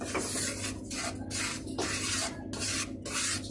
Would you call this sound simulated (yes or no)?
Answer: no